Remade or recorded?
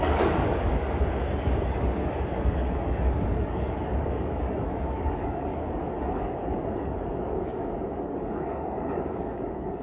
remade